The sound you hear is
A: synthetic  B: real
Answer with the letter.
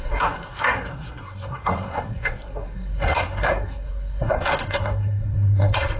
A